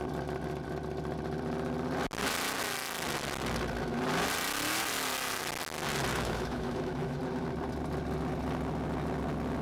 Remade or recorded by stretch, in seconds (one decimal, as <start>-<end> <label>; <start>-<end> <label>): 0.0-6.1 recorded; 6.1-7.2 remade; 7.2-9.6 recorded

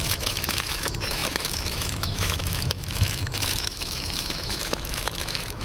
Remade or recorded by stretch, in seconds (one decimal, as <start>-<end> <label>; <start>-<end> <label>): 0.0-5.6 remade

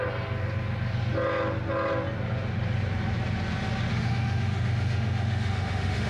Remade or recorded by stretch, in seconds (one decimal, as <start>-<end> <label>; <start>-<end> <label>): 0.0-3.9 recorded; 3.9-6.1 remade

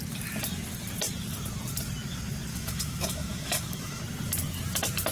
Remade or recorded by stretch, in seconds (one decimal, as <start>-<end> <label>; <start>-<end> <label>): 0.0-2.5 recorded; 2.5-4.0 remade; 4.0-5.1 recorded

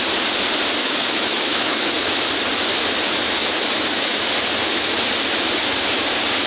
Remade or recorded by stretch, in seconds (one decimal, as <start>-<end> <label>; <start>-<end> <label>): 0.0-0.8 recorded; 0.8-2.3 remade; 2.3-3.4 recorded; 3.4-4.2 remade; 4.2-6.5 recorded